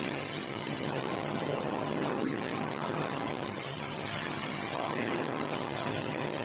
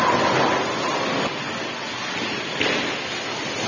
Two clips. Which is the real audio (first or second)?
second